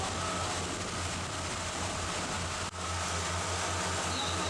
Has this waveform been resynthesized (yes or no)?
no